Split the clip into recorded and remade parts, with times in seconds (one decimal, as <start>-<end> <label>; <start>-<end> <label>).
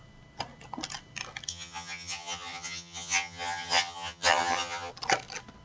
0.0-1.5 recorded; 1.5-4.9 remade; 4.9-5.6 recorded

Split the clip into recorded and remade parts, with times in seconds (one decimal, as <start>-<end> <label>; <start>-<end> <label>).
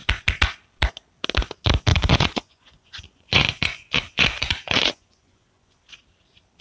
0.0-1.9 recorded; 1.9-5.9 remade; 5.9-6.6 recorded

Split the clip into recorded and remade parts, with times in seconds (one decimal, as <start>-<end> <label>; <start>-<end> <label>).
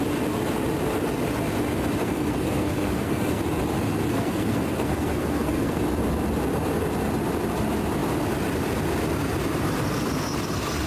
0.0-2.0 recorded; 2.0-3.4 remade; 3.4-4.1 recorded; 4.1-5.8 remade; 5.8-10.9 recorded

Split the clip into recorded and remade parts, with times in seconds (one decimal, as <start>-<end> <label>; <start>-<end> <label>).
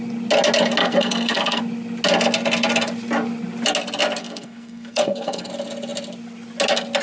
0.0-0.8 recorded; 0.8-1.6 remade; 1.6-4.2 recorded; 4.2-5.5 remade; 5.5-7.0 recorded